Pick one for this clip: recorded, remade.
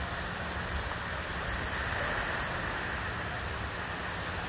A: recorded